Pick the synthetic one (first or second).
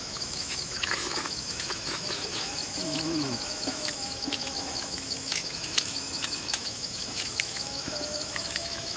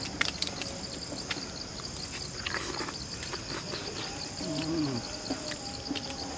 first